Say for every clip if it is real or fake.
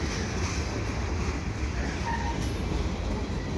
real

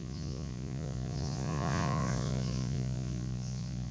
fake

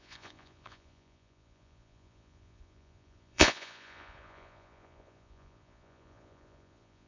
fake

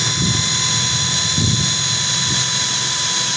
real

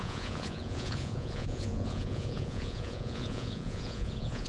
fake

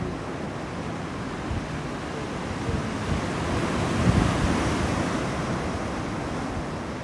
real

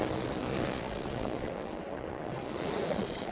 fake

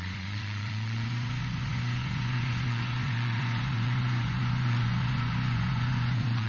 fake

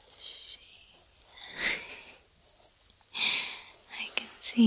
real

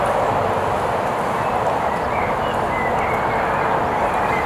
real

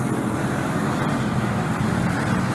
real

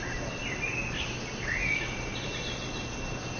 real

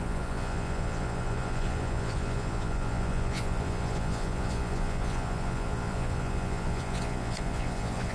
fake